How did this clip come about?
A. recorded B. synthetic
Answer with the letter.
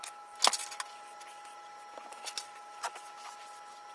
A